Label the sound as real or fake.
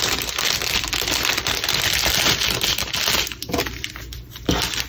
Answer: real